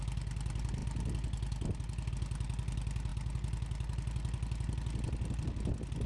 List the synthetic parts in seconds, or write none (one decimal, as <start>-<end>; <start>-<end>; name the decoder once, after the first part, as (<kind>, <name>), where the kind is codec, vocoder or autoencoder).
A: none